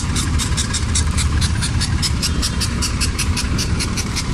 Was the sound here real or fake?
fake